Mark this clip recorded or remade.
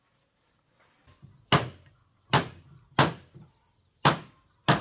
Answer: recorded